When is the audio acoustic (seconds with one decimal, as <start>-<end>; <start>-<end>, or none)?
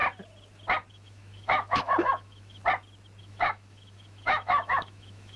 0.0-0.9; 2.6-3.2